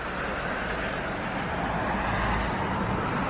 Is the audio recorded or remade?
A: recorded